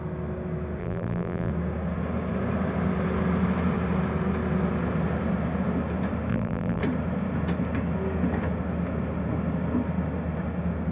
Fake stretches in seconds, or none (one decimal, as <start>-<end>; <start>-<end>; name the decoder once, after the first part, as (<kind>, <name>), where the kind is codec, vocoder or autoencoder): 0.8-1.5 (vocoder, BigVGAN v2); 6.3-6.8